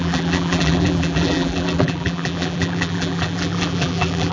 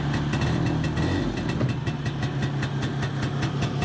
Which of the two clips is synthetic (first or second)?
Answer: first